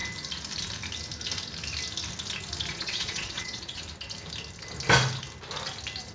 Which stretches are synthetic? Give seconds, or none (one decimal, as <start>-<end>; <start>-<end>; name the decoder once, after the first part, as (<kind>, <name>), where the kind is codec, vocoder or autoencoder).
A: 2.7-3.8 (vocoder, Vocos)